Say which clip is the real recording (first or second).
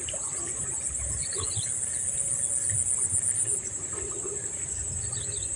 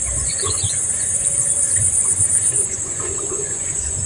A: first